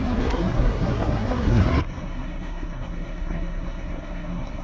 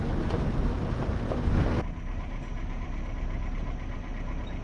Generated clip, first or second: first